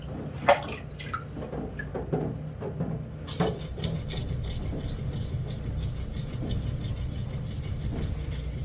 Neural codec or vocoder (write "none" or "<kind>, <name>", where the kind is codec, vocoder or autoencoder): none